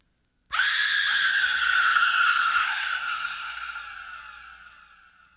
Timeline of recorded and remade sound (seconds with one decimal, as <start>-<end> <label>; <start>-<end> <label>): 0.0-1.3 recorded; 1.3-3.8 remade; 3.8-5.4 recorded